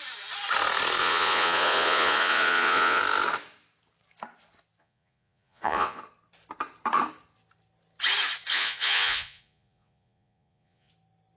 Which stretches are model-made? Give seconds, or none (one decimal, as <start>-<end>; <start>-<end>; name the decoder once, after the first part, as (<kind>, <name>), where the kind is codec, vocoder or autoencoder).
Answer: 1.0-3.0 (vocoder, Vocos); 4.8-6.0; 8.5-10.9